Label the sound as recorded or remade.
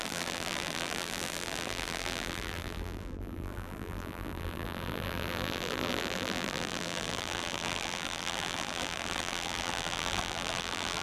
remade